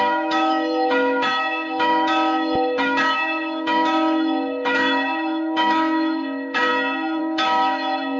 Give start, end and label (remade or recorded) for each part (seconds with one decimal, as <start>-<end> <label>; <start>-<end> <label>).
0.0-6.7 remade; 6.7-7.2 recorded; 7.2-8.2 remade